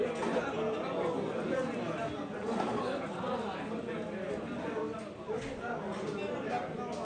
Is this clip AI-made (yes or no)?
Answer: no